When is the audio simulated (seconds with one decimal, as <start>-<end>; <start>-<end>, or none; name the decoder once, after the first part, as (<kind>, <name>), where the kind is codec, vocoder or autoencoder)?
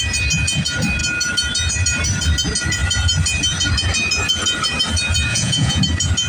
5.3-5.8 (vocoder, Vocos)